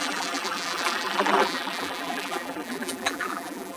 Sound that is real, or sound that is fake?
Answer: fake